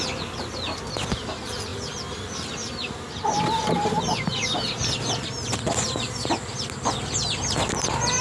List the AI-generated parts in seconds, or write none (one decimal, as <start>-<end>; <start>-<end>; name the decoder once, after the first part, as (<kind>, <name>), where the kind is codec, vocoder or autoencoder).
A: none